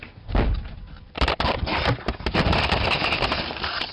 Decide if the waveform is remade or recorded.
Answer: remade